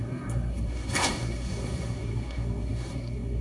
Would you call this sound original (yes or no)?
no